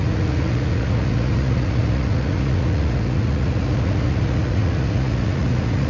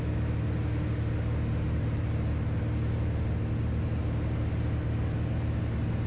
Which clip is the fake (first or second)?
first